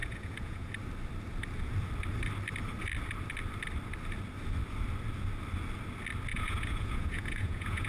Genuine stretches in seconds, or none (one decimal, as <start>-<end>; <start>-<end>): 0.7-6.3

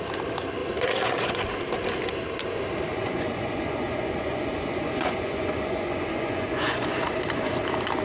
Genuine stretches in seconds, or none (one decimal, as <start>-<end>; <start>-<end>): 0.0-0.6; 1.4-2.9; 7.6-8.0